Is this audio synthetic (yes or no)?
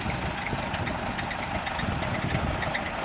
no